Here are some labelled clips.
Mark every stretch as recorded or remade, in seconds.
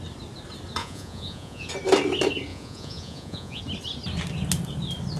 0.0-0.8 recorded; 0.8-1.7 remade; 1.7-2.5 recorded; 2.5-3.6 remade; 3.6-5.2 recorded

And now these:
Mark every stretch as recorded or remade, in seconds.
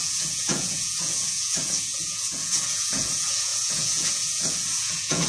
0.0-5.3 remade